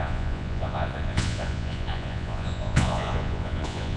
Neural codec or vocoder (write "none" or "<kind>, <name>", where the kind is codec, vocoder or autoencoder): vocoder, Vocos